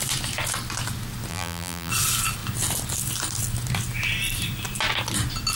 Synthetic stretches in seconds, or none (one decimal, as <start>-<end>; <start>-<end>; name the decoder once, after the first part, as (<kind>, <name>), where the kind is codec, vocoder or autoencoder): 1.3-1.9 (vocoder, BigVGAN v2)